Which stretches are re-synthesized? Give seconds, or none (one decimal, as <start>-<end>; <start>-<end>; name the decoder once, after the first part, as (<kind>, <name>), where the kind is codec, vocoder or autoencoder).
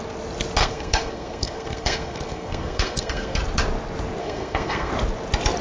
0.6-3.4 (codec, SNAC); 4.2-4.9